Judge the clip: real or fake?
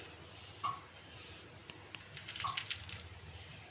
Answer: real